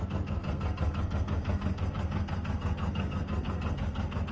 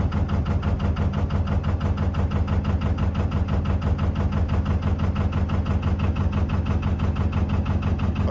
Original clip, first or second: second